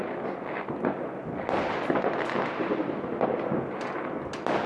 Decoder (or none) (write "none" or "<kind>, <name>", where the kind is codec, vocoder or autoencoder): none